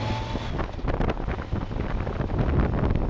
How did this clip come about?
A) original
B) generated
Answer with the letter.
A